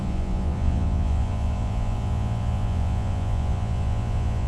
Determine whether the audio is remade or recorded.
remade